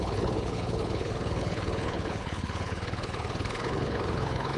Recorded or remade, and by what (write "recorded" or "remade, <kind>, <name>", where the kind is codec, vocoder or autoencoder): remade, codec, HILCodec